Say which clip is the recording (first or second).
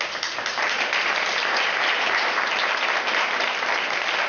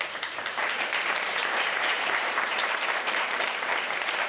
first